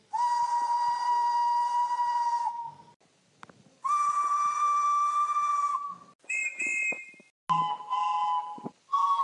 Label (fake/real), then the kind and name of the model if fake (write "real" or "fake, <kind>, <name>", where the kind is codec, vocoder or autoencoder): real